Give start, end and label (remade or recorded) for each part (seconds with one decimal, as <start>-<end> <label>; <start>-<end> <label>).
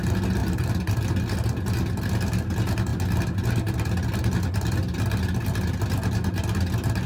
0.0-0.4 recorded; 0.4-1.1 remade; 1.1-7.1 recorded